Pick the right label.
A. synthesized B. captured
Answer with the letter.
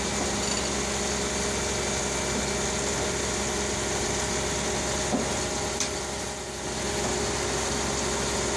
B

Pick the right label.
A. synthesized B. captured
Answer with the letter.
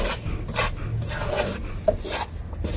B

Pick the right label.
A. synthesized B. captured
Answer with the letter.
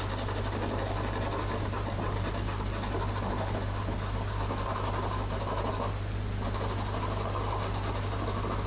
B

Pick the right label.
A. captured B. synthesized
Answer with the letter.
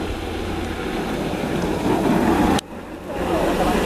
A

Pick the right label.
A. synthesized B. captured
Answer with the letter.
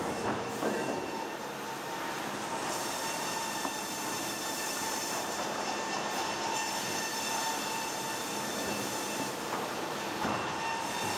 A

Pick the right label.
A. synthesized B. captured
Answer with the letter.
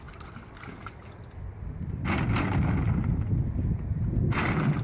B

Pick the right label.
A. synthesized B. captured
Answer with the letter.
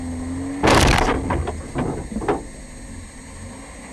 B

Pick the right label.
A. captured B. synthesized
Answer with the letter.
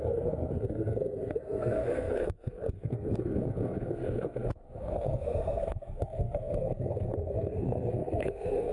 B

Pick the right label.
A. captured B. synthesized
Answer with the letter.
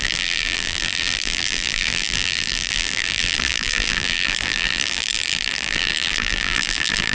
B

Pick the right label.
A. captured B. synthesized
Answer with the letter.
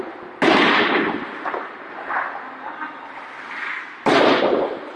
A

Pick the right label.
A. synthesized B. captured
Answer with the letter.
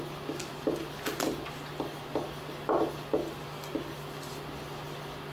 B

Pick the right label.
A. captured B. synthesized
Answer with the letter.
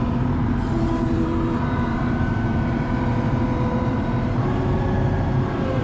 B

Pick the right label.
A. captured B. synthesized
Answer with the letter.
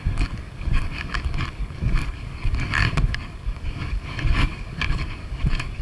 B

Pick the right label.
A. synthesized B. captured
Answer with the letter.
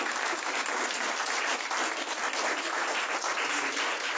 B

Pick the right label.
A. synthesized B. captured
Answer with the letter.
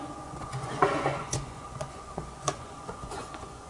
A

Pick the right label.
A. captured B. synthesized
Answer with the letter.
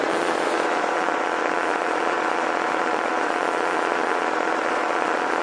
B